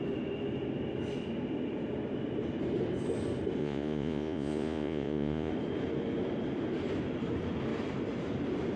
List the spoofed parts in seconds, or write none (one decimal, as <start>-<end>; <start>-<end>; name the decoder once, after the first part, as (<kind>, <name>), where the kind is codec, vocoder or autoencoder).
3.6-5.5 (vocoder, Vocos)